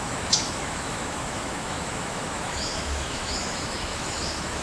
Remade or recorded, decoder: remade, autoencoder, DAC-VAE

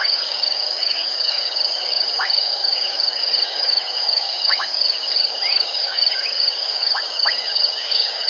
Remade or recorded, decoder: remade, codec, DAC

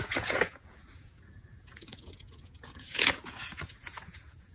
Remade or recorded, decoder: remade, vocoder, Vocos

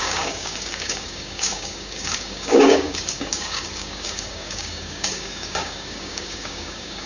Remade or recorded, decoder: remade, codec, DAC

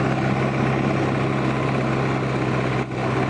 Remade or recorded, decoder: recorded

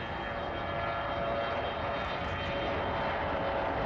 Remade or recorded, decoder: recorded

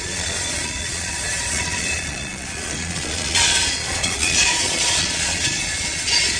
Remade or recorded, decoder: remade, vocoder, Vocos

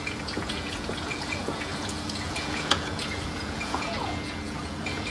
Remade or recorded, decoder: remade, vocoder, Vocos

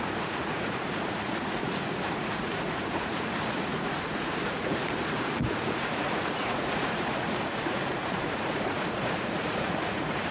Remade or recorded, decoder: remade, vocoder, Vocos